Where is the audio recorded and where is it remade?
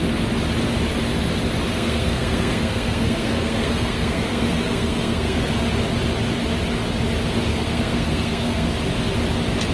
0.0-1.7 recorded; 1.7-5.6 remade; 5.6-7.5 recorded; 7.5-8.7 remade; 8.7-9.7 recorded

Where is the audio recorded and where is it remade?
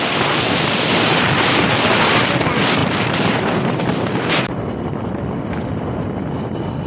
0.0-2.8 recorded; 2.8-4.5 remade; 4.5-6.9 recorded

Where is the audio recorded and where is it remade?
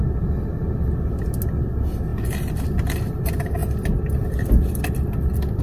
0.0-5.6 recorded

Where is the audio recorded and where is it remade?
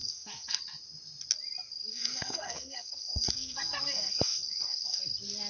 0.0-0.6 remade; 0.6-1.9 recorded; 1.9-5.0 remade; 5.0-5.5 recorded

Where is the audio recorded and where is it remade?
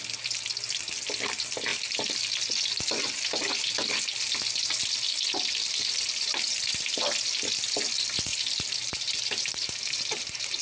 0.0-8.3 recorded; 8.3-10.6 remade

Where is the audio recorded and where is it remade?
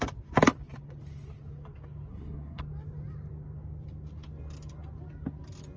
0.0-2.1 recorded; 2.1-2.6 remade; 2.6-5.8 recorded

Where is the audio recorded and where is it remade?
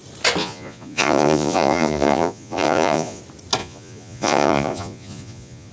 0.0-0.4 recorded; 0.4-3.2 remade; 3.2-3.6 recorded; 3.6-5.7 remade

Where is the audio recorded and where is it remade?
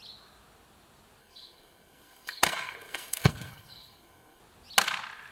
0.0-1.2 recorded; 1.2-4.4 remade; 4.4-5.3 recorded